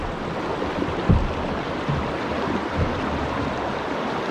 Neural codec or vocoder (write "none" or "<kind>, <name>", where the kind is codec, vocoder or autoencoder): none